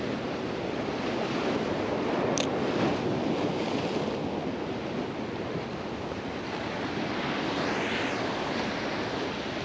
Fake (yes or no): no